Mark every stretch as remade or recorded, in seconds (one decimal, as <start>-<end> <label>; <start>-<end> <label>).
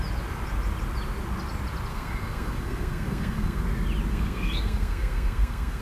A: 0.0-1.9 recorded; 1.9-3.6 remade; 3.6-4.1 recorded; 4.1-5.8 remade